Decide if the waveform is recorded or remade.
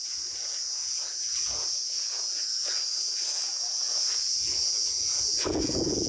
remade